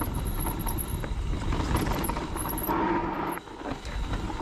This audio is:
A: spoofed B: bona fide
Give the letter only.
B